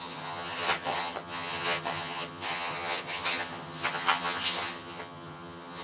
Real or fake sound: fake